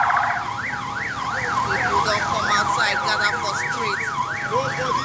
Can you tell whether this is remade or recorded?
recorded